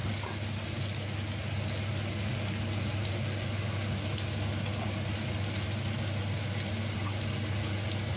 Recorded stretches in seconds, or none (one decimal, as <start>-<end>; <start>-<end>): 0.0-8.2